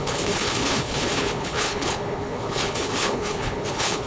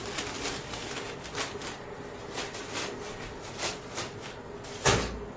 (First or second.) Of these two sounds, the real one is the second